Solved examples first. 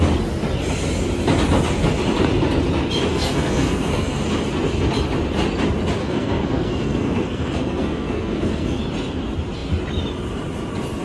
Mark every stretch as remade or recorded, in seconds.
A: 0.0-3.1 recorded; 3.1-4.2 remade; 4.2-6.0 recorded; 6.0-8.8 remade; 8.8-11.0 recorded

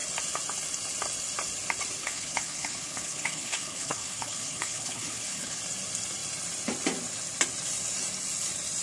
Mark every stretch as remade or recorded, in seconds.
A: 0.0-2.0 recorded; 2.0-5.6 remade; 5.6-8.8 recorded